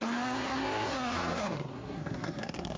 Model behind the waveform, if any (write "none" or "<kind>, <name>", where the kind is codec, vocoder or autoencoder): codec, SNAC